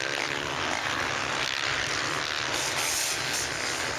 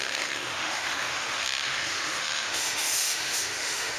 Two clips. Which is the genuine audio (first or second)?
first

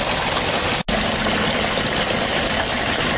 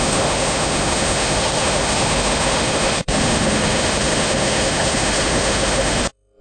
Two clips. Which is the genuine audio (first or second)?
first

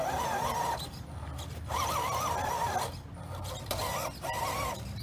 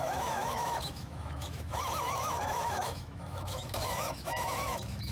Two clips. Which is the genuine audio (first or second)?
first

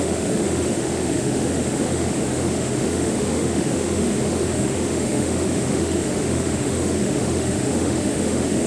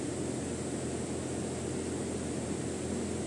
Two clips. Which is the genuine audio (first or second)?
second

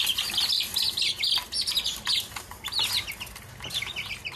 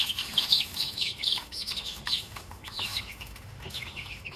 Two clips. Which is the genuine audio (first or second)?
first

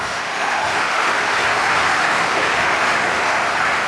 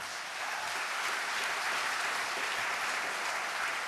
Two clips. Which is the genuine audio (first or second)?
second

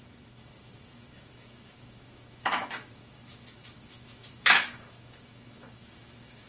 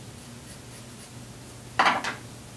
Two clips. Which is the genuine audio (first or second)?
second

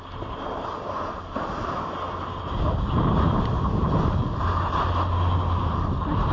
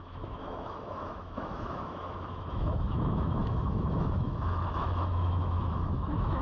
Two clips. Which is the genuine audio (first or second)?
first